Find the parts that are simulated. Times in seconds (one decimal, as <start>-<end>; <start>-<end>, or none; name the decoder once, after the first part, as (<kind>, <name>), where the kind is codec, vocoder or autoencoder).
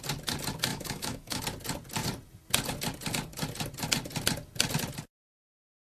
0.7-1.4 (autoencoder, DAC-VAE)